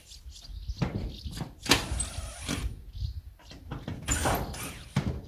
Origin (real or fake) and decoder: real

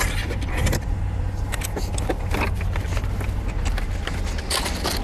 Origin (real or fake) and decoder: real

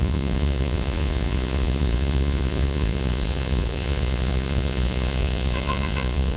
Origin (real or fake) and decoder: fake, vocoder, Vocos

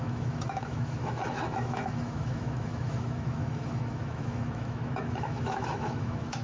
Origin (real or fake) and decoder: fake, autoencoder, DAC-VAE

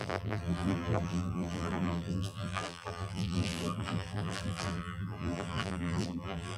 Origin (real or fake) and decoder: fake, vocoder, BigVGAN v2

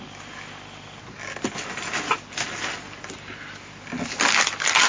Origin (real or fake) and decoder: real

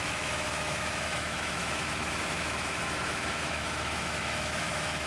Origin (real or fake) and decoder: fake, autoencoder, DAC-VAE